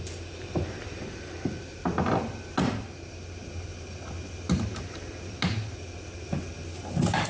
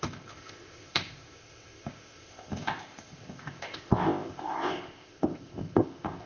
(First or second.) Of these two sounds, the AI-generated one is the second